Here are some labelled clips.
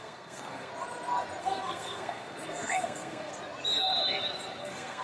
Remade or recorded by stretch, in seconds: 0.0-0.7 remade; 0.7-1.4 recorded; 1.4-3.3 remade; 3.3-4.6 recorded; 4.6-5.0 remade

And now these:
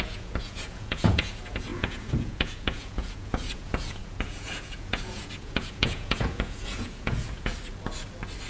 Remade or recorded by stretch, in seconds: 0.0-7.5 remade; 7.5-8.5 recorded

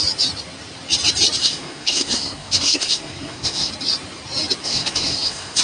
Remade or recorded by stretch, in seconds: 0.0-1.4 recorded; 1.4-3.7 remade; 3.7-4.6 recorded; 4.6-5.6 remade

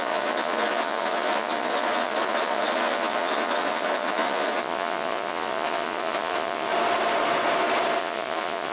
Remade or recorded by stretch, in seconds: 0.0-6.7 remade; 6.7-8.0 recorded; 8.0-8.7 remade

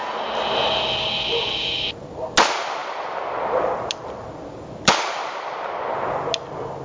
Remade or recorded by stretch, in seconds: 0.0-6.8 recorded